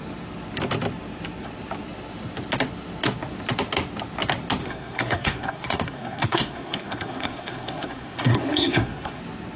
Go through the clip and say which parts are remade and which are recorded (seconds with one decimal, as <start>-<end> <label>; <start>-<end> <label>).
0.0-4.6 recorded; 4.6-9.2 remade; 9.2-9.6 recorded